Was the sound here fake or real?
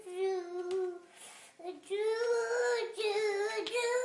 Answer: real